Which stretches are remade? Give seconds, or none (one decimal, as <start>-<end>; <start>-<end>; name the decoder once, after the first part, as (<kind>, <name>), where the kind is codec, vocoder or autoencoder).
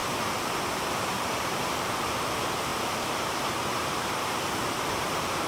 0.7-5.5 (vocoder, BigVGAN v2)